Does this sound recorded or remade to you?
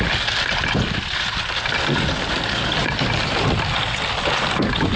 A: recorded